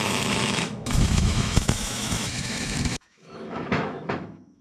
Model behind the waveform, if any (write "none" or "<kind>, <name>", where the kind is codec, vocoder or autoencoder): autoencoder, DAC-VAE